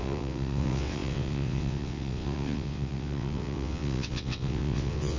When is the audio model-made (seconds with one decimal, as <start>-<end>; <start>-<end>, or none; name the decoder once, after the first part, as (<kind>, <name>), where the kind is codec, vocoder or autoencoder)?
0.0-5.2 (vocoder, WaveNeXt)